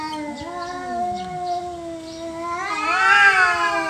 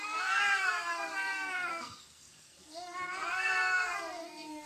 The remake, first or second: second